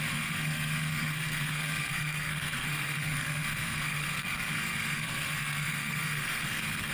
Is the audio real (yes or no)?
no